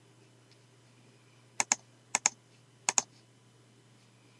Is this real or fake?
real